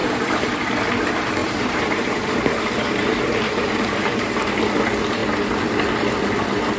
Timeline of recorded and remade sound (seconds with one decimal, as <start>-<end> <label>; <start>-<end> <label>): 0.0-0.7 remade; 0.7-1.4 recorded; 1.4-4.5 remade; 4.5-6.8 recorded